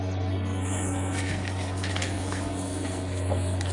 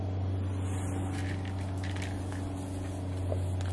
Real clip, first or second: second